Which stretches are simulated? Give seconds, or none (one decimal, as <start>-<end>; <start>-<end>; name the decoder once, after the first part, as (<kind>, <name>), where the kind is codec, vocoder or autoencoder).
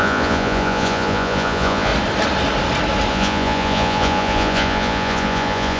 0.0-1.9 (vocoder, Vocos); 3.1-5.8